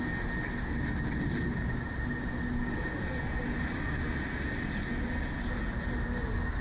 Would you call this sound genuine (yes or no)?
yes